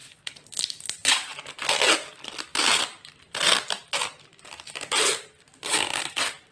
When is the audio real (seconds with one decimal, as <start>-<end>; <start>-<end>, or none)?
0.0-6.5